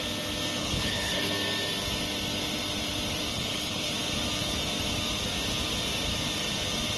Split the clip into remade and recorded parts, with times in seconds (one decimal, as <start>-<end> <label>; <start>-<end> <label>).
0.0-0.6 recorded; 0.6-1.3 remade; 1.3-3.3 recorded; 3.3-3.9 remade; 3.9-7.0 recorded